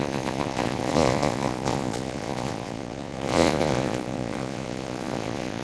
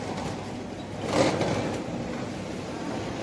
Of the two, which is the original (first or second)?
second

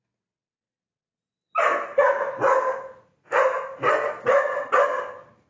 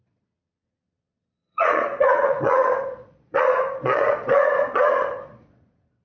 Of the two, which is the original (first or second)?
first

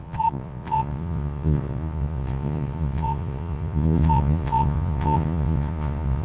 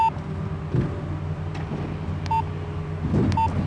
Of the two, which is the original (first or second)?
second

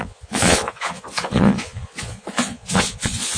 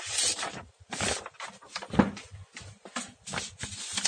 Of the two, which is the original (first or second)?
second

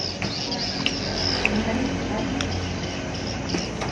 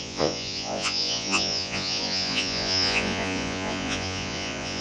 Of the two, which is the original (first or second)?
first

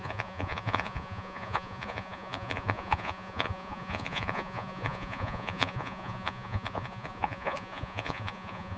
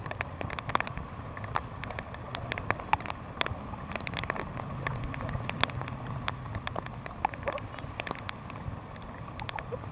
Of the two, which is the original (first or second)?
second